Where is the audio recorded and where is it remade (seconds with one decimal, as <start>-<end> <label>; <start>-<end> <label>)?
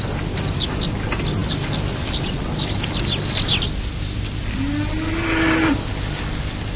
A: 0.0-6.8 recorded